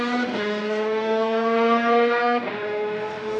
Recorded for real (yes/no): no